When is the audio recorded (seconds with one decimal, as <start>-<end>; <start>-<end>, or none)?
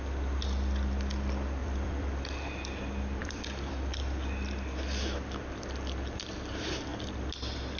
0.0-1.6; 2.1-3.2; 3.7-7.8